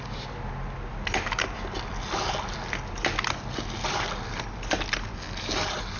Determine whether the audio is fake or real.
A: real